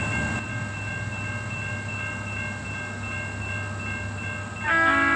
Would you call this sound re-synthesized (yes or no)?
no